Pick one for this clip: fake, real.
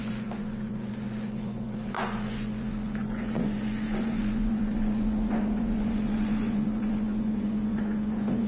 fake